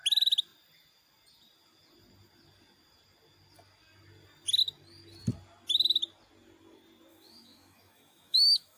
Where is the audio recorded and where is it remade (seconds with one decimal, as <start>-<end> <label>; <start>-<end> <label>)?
0.0-7.1 recorded; 7.1-8.8 remade